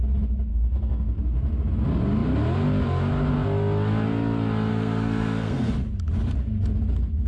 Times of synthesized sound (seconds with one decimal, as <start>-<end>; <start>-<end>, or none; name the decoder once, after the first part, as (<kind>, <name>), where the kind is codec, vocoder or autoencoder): 0.5-1.2 (codec, SNAC); 4.7-5.7

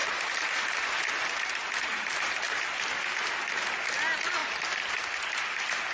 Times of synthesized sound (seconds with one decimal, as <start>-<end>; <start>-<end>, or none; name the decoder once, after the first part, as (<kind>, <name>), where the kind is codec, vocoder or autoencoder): none